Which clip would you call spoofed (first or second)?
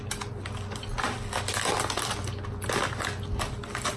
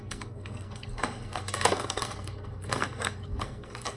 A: second